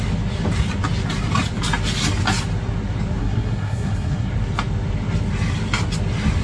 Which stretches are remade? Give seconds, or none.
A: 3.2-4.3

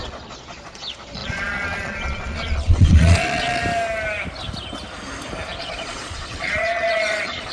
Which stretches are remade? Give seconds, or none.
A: 0.0-3.6; 5.6-7.5

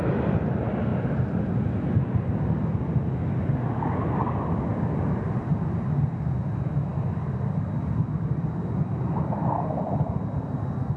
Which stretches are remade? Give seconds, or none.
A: 4.7-5.5; 6.9-9.8

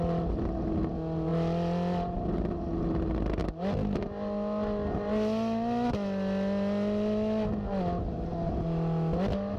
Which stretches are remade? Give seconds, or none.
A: none